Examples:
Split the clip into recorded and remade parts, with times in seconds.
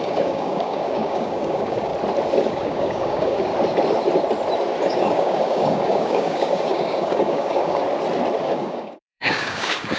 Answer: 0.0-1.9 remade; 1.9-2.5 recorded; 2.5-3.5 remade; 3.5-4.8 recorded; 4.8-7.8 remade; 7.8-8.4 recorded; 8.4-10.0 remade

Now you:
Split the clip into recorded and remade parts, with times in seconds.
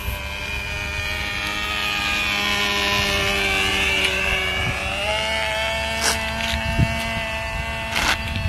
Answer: 0.0-3.7 recorded; 3.7-5.1 remade; 5.1-8.5 recorded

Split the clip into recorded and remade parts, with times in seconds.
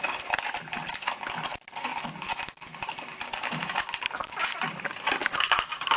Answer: 0.0-5.2 recorded; 5.2-6.0 remade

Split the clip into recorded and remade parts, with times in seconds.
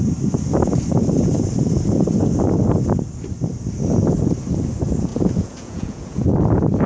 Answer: 0.0-5.1 recorded; 5.1-6.3 remade; 6.3-6.9 recorded